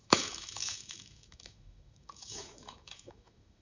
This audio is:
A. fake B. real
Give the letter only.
A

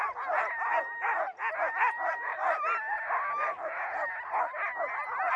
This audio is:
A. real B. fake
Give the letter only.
A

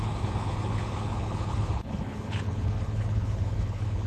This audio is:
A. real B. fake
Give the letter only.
B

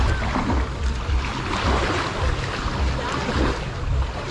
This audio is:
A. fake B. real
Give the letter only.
B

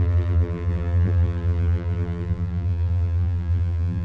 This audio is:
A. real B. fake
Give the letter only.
B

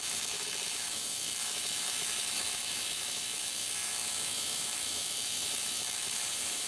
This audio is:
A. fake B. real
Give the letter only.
A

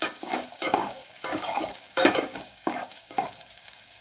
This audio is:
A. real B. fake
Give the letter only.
B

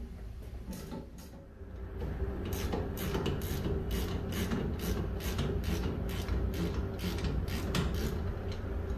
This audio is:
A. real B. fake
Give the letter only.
A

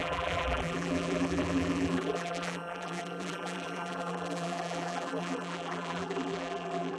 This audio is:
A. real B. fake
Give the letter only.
B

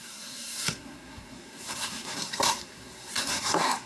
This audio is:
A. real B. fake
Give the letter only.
B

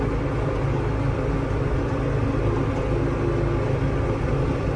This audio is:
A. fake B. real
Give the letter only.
B